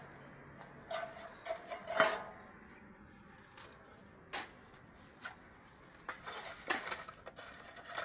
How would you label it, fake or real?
real